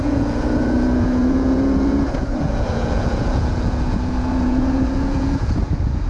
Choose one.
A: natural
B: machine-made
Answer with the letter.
B